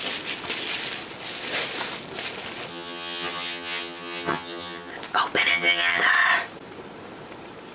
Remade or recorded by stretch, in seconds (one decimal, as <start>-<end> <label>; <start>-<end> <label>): 0.0-2.7 recorded; 2.7-4.9 remade; 4.9-5.5 recorded; 5.5-6.0 remade; 6.0-7.7 recorded